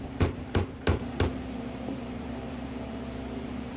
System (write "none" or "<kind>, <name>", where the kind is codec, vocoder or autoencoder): vocoder, BigVGAN v2